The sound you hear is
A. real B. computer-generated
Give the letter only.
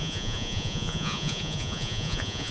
B